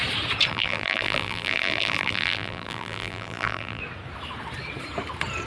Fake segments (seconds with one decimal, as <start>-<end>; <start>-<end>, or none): 0.5-3.8